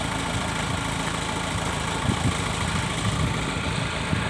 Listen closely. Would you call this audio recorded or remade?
recorded